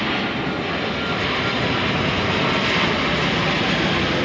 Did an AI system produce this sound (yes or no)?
no